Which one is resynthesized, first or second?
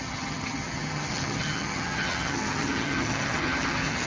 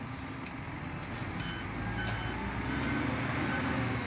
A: first